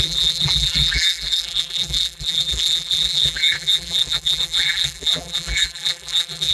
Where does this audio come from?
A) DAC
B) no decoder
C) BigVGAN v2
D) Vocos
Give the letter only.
C